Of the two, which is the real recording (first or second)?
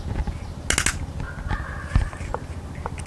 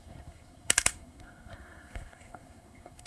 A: first